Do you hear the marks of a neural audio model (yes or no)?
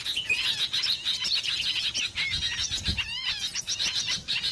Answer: yes